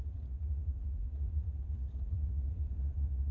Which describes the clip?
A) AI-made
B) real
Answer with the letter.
A